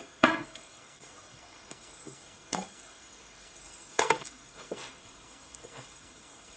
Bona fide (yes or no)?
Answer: no